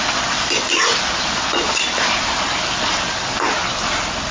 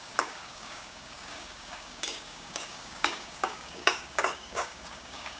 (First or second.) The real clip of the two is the first